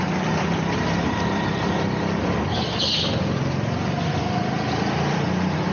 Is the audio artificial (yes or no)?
no